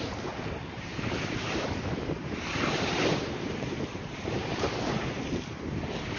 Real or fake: fake